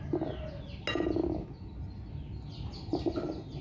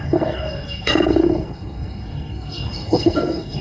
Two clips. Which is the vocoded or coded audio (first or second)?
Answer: second